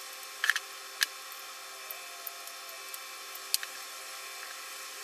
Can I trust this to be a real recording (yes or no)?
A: yes